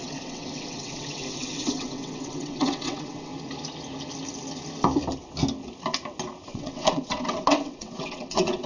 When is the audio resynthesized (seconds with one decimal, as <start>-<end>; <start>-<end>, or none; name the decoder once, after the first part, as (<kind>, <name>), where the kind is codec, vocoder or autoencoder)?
0.0-3.3 (vocoder, WaveNeXt); 6.5-8.7